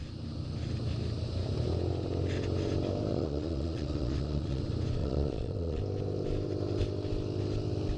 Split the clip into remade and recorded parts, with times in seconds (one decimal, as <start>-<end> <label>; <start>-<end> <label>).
0.0-3.1 recorded; 3.1-4.6 remade; 4.6-5.0 recorded; 5.0-5.8 remade; 5.8-8.0 recorded